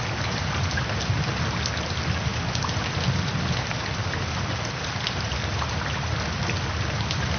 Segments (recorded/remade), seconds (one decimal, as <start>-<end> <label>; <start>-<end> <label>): 0.0-2.3 recorded; 2.3-5.4 remade; 5.4-7.4 recorded